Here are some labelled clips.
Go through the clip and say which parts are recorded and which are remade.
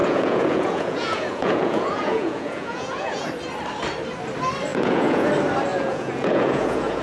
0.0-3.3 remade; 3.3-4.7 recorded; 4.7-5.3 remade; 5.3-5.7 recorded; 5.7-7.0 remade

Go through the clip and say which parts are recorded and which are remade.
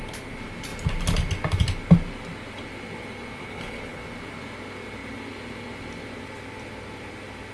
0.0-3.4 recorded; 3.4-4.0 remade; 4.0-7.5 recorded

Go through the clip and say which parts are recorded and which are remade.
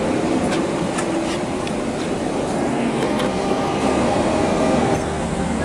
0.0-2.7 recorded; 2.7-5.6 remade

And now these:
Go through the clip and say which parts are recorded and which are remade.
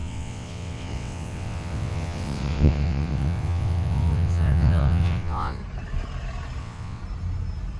0.0-5.6 remade; 5.6-6.6 recorded; 6.6-7.0 remade; 7.0-7.8 recorded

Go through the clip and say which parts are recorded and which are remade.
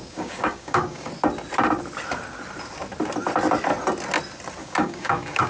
0.0-1.1 remade; 1.1-4.6 recorded; 4.6-5.5 remade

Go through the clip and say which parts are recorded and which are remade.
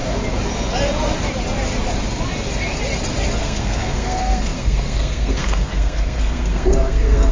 0.0-3.4 recorded; 3.4-7.3 remade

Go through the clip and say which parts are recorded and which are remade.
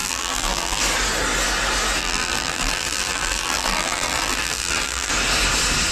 0.0-0.8 remade; 0.8-2.0 recorded; 2.0-5.1 remade; 5.1-5.9 recorded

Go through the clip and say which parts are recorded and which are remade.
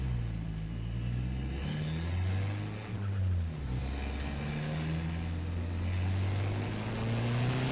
0.0-7.7 recorded